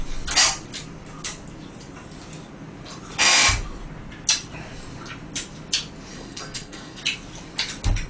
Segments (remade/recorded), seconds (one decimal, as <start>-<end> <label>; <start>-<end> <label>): 0.0-6.1 recorded; 6.1-7.0 remade; 7.0-8.1 recorded